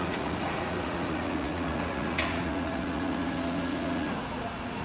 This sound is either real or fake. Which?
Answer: fake